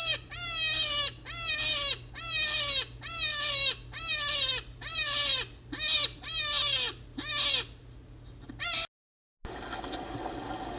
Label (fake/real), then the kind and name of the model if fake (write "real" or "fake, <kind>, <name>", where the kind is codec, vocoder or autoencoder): real